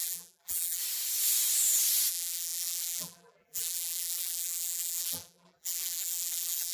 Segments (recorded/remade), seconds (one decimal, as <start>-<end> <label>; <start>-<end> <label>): 0.0-0.8 remade; 0.8-2.1 recorded; 2.1-6.7 remade